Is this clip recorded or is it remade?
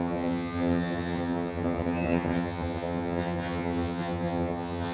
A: remade